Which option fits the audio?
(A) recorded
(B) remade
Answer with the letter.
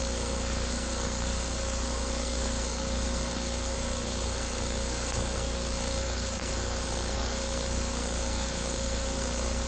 B